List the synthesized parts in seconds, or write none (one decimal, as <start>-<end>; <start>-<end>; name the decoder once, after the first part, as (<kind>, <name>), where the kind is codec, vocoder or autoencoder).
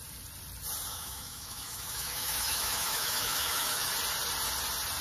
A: 0.9-3.9 (autoencoder, DAC-VAE)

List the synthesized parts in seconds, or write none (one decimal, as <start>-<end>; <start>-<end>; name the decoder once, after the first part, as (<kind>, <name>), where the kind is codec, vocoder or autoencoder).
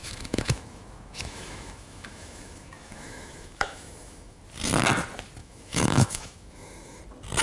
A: 0.0-4.4 (autoencoder, DAC-VAE); 5.4-7.0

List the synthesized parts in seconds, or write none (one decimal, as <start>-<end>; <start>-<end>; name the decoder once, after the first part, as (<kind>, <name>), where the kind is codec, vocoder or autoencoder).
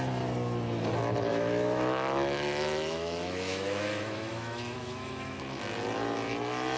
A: 1.3-5.4 (autoencoder, DAC-VAE)